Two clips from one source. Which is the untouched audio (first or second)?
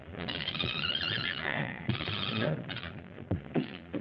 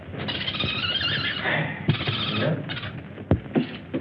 second